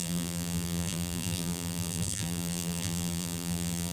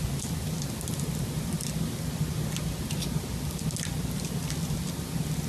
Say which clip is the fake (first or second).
first